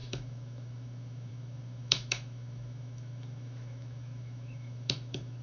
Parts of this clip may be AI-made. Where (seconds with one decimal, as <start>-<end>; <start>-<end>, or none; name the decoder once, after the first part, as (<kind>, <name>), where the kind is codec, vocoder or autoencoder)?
0.0-5.4 (autoencoder, DAC-VAE)

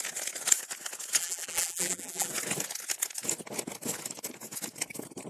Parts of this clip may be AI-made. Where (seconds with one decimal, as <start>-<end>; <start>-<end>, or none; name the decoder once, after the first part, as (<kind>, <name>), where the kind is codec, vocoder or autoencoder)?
1.2-2.3 (vocoder, BigVGAN v2)

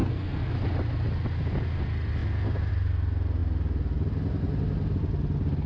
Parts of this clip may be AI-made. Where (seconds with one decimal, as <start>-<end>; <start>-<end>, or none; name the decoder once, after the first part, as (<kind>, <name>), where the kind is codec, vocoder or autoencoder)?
0.0-0.5 (codec, SNAC)

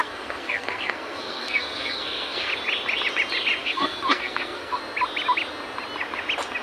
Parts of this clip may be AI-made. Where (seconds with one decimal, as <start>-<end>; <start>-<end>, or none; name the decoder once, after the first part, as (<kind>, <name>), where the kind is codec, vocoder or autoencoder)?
0.0-2.5 (codec, SNAC); 3.6-4.8

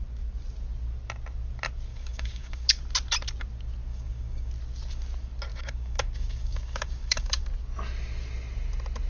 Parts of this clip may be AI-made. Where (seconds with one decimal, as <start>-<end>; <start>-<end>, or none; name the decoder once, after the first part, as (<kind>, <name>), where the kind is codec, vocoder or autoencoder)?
1.9-2.8 (codec, DAC); 3.9-4.5; 5.5-7.4

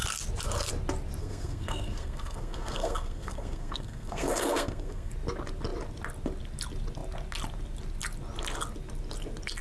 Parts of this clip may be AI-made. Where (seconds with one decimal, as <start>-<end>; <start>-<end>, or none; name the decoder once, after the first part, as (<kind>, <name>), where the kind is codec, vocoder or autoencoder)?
1.2-5.1 (codec, SNAC)

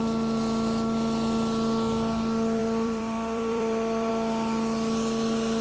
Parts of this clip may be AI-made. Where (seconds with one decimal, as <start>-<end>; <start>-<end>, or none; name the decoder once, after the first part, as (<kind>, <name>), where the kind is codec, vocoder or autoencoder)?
2.6-4.1 (vocoder, BigVGAN v2)

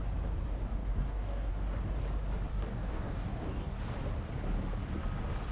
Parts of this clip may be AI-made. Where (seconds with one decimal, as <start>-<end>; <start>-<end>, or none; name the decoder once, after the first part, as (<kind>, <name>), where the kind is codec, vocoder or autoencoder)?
0.8-1.5 (codec, DAC); 2.5-3.8